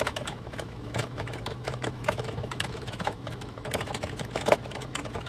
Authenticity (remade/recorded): remade